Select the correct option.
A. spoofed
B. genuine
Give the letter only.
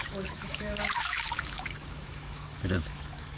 A